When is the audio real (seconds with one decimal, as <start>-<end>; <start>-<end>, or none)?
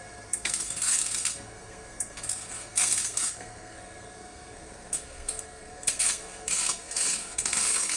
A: none